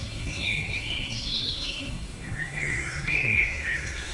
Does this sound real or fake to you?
fake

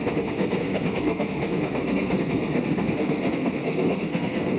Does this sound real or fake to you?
fake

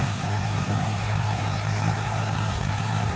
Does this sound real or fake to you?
fake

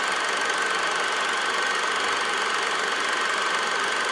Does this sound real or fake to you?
real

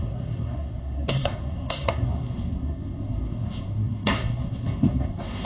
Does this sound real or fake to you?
fake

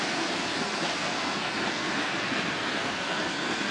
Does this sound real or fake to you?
fake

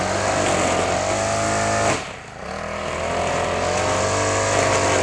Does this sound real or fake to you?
real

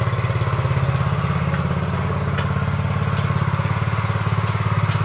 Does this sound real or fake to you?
real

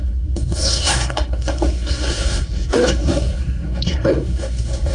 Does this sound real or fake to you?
fake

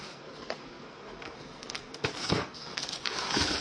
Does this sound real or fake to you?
fake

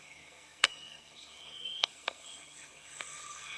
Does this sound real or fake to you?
fake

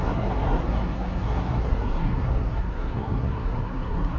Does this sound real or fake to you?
fake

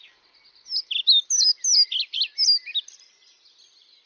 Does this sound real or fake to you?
real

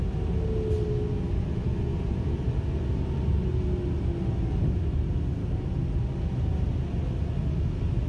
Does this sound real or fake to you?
real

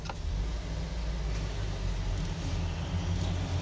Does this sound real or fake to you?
real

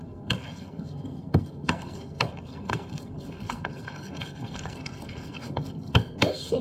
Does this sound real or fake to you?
fake